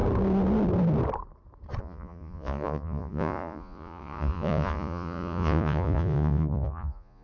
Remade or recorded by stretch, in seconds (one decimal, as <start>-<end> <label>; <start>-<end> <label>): 0.0-1.8 recorded; 1.8-7.2 remade